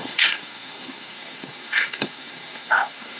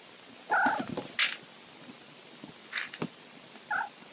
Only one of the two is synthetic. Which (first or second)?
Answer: first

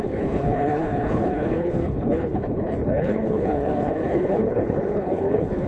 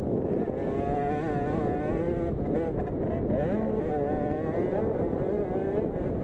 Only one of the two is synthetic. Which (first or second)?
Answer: first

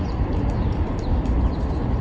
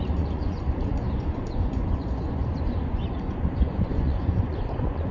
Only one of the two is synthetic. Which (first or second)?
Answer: second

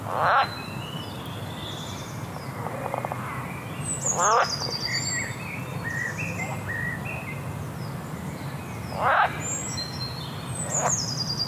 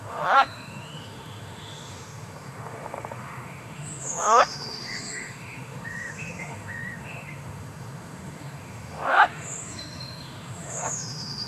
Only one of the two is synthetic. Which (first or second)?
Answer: second